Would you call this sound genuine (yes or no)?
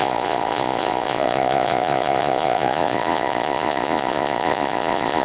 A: no